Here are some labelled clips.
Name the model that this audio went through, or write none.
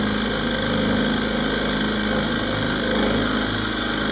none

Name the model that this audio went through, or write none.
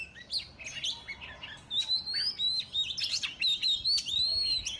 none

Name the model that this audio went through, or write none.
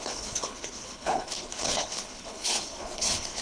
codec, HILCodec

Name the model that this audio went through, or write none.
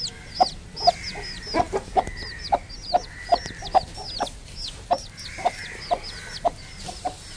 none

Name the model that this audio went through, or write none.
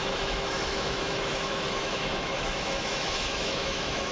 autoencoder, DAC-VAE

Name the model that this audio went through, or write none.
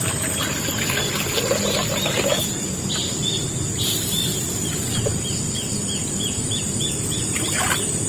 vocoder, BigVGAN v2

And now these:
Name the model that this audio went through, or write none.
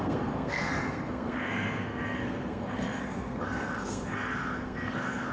codec, SNAC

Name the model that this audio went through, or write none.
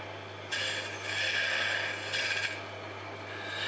none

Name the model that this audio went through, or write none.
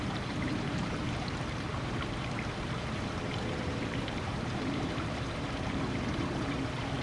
vocoder, BigVGAN v2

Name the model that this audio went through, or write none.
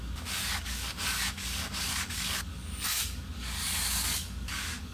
codec, DAC